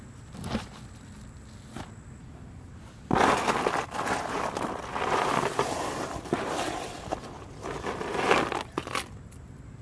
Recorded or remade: recorded